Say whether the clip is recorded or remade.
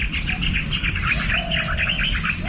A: recorded